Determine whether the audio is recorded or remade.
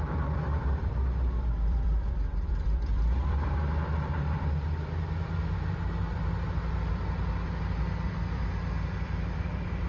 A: remade